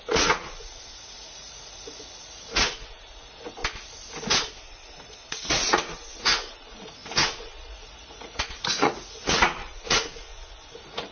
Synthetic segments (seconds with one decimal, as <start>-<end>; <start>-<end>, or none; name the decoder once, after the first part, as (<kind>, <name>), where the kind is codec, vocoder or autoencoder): 0.0-3.6 (vocoder, Vocos); 4.6-11.1